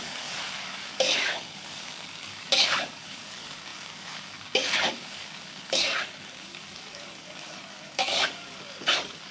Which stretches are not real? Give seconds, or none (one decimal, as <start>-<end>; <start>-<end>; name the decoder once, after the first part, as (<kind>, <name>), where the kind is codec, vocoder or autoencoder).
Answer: 0.0-9.3 (codec, DAC)